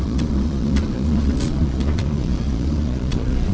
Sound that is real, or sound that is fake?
fake